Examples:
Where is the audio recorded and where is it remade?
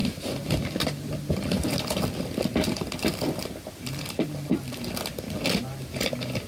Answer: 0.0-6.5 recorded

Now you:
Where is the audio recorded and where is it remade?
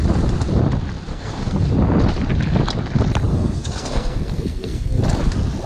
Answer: 0.0-1.1 recorded; 1.1-1.7 remade; 1.7-3.3 recorded; 3.3-5.0 remade; 5.0-5.7 recorded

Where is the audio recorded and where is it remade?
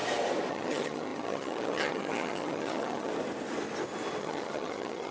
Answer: 0.0-0.5 recorded; 0.5-3.1 remade; 3.1-4.2 recorded; 4.2-5.1 remade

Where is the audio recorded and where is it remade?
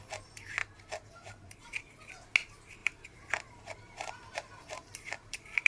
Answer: 0.0-0.6 recorded; 0.6-1.6 remade; 1.6-2.8 recorded; 2.8-5.7 remade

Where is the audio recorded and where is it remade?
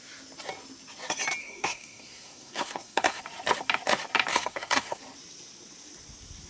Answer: 0.0-1.4 recorded; 1.4-3.2 remade; 3.2-4.3 recorded; 4.3-5.0 remade; 5.0-6.5 recorded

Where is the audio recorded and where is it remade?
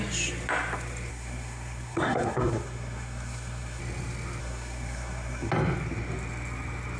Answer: 0.0-1.1 recorded; 1.1-3.8 remade; 3.8-4.4 recorded; 4.4-5.5 remade; 5.5-7.0 recorded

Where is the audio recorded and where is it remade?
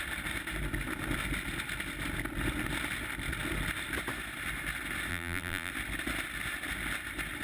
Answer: 0.0-5.1 recorded; 5.1-5.7 remade; 5.7-7.4 recorded